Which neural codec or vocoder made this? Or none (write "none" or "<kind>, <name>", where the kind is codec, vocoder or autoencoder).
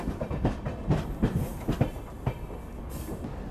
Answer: none